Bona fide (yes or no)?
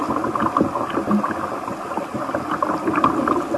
yes